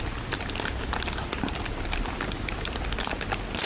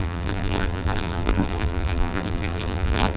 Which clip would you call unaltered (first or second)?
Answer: first